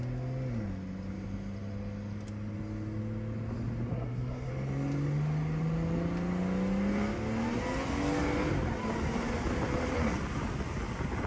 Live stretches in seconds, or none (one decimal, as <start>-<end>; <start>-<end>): 0.0-3.9; 4.5-11.3